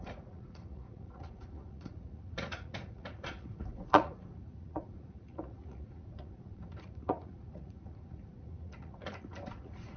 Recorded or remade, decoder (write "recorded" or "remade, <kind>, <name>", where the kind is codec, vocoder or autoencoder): remade, vocoder, Vocos